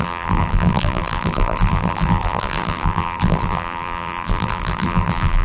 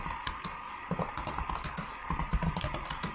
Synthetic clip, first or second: first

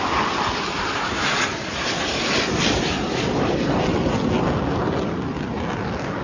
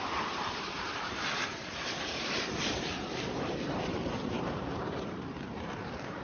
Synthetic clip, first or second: second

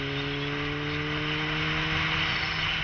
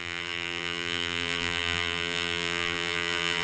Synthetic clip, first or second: second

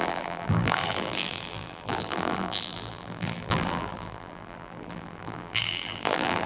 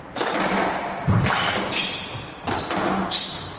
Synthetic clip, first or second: first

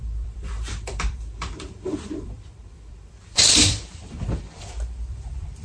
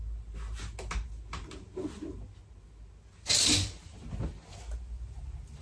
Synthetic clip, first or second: first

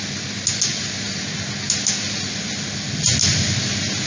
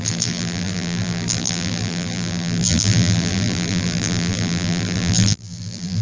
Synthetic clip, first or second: second